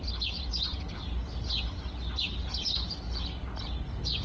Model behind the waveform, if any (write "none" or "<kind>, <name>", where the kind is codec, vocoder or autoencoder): none